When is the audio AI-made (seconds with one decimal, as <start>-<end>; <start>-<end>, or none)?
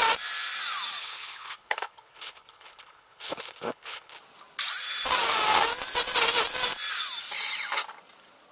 1.0-4.2